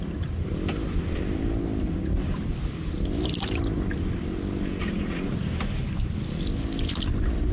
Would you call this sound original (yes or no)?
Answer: yes